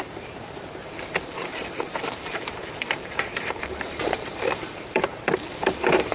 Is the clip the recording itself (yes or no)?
no